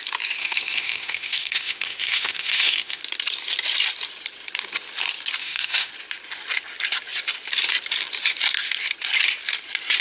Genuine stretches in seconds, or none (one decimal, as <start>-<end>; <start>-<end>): 0.0-0.4; 3.0-5.4; 5.9-10.0